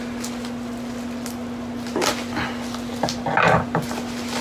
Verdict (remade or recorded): recorded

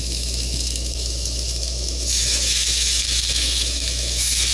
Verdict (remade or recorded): remade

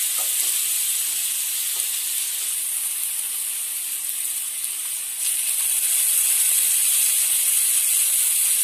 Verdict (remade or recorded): recorded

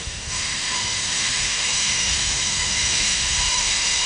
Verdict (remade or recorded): remade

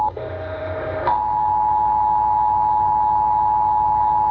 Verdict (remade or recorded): remade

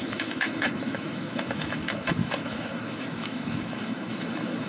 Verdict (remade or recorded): remade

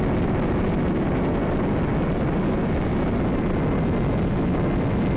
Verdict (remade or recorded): recorded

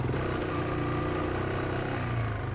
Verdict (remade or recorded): recorded